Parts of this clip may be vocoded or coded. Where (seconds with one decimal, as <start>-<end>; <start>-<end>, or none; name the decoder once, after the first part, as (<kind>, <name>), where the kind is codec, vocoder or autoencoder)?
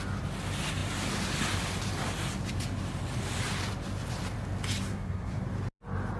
4.9-5.4 (codec, SNAC)